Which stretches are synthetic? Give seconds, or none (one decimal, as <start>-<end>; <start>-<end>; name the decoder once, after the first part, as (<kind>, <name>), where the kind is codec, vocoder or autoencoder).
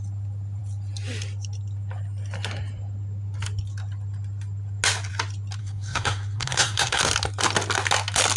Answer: 5.6-7.0 (codec, SNAC)